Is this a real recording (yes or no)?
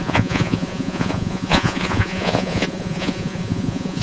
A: no